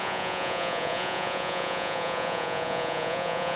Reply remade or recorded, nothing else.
remade